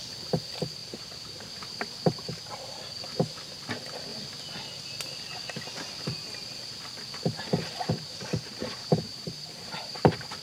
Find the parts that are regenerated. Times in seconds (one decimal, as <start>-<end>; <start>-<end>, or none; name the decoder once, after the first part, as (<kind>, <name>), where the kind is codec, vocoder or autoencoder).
0.8-1.7 (vocoder, BigVGAN v2); 9.1-9.9